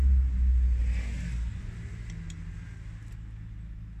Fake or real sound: real